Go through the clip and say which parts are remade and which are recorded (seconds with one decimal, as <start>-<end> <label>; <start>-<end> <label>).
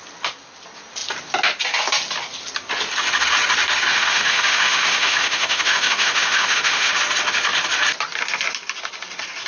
0.0-3.9 recorded; 3.9-6.9 remade; 6.9-9.5 recorded